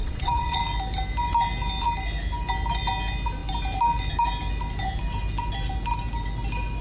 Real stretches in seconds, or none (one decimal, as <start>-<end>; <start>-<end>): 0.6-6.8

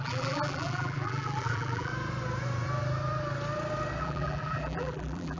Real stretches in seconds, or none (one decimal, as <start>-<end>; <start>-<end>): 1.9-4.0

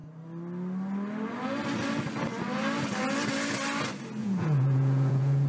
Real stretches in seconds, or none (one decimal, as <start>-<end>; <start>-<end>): 0.0-4.2

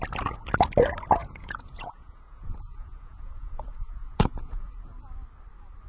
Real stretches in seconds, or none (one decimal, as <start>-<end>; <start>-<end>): 0.0-1.2; 4.7-5.9

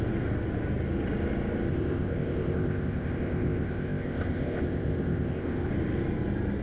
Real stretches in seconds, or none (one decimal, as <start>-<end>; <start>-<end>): 0.0-1.7; 5.7-6.6

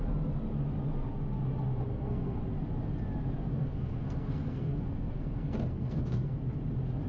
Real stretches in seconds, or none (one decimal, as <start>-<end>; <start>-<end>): 0.0-1.9; 2.4-3.5; 6.4-7.1